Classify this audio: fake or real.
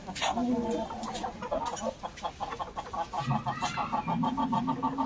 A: real